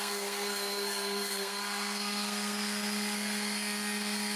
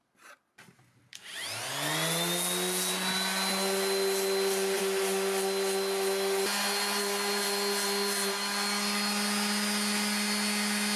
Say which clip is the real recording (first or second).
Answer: second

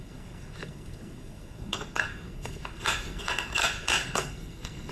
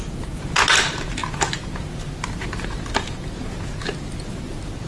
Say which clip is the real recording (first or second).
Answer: second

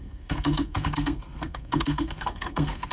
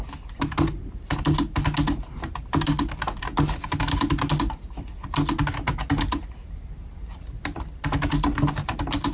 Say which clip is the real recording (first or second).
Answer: second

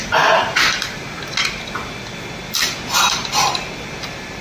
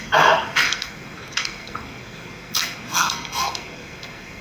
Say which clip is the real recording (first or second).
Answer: first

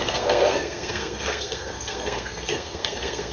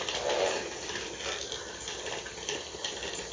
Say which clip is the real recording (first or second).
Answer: second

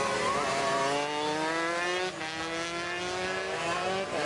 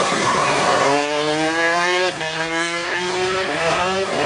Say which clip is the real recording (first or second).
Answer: first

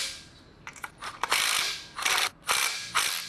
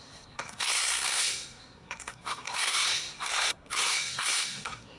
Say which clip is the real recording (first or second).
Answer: first